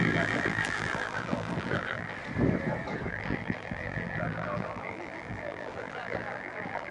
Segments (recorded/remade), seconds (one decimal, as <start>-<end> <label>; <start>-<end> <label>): 0.0-2.2 remade; 2.2-3.1 recorded; 3.1-6.9 remade